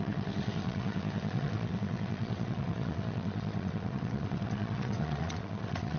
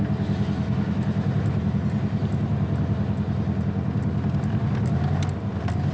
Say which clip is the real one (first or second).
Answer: second